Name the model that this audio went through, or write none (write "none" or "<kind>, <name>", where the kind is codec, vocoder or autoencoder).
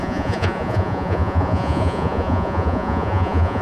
vocoder, Vocos